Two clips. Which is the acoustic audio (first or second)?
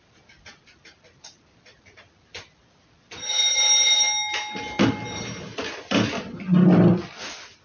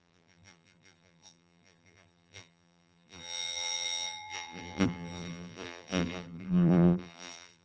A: first